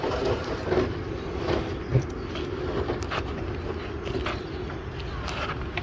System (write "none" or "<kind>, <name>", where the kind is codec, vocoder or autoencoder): none